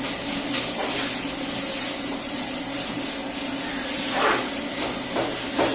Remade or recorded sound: recorded